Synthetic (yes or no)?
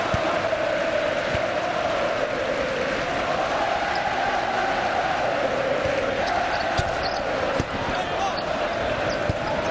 no